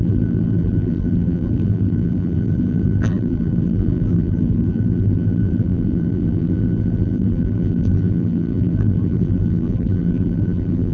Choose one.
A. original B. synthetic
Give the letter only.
B